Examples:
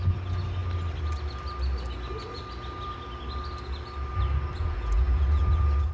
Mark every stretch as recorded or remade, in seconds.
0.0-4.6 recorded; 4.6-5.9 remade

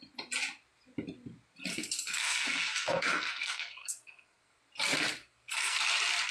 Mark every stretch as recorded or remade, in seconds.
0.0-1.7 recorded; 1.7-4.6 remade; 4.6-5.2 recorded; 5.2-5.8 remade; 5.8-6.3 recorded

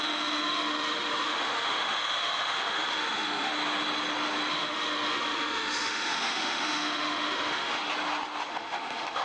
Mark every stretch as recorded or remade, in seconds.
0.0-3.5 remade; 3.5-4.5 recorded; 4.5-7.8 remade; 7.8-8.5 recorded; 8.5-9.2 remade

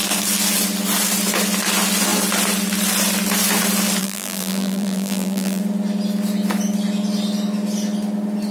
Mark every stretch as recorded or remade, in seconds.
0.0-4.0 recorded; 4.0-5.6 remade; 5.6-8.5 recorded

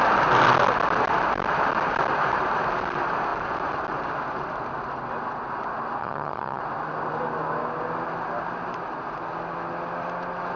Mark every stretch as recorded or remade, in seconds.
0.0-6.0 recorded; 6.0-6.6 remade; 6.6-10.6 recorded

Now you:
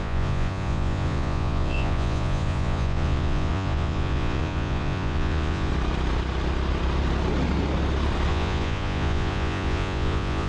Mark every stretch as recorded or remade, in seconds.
0.0-5.7 remade; 5.7-8.3 recorded; 8.3-10.5 remade